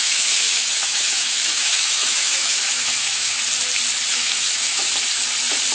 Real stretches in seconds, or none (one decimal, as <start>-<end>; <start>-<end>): 3.4-4.1; 4.9-5.7